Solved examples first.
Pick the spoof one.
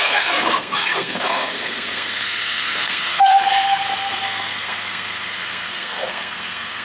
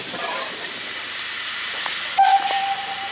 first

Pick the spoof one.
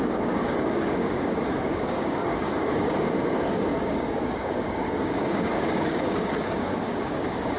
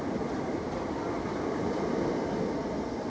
first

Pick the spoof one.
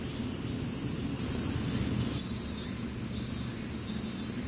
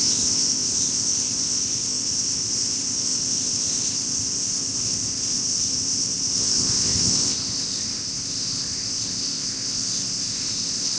second